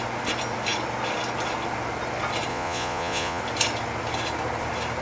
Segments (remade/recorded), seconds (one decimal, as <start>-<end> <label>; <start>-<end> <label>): 0.0-2.5 recorded; 2.5-3.4 remade; 3.4-5.0 recorded